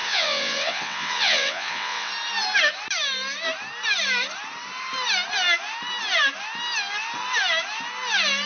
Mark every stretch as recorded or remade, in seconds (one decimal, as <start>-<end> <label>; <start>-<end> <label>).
0.0-2.1 remade; 2.1-8.5 recorded